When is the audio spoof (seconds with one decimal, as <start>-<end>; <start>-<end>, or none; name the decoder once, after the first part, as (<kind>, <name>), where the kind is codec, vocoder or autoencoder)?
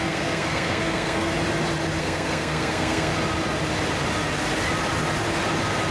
0.0-1.3 (codec, SNAC); 2.0-3.1